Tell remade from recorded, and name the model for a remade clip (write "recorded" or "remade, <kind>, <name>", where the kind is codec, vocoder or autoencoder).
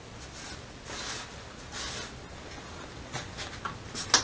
recorded